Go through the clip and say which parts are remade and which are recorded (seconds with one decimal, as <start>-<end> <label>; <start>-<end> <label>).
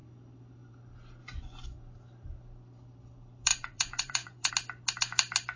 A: 0.0-1.2 recorded; 1.2-1.8 remade; 1.8-3.5 recorded; 3.5-4.5 remade; 4.5-5.6 recorded